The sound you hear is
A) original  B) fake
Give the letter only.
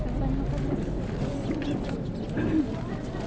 A